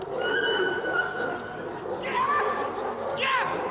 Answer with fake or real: real